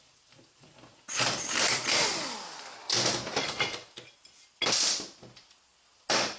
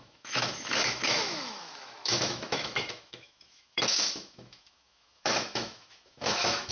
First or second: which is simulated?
second